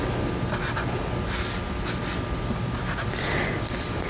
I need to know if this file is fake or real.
real